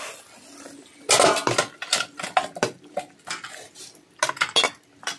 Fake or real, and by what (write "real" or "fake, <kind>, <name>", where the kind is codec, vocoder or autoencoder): real